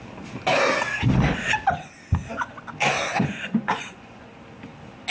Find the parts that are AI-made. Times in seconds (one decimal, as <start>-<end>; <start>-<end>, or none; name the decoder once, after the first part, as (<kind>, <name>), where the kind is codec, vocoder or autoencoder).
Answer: 2.8-4.3 (vocoder, Vocos)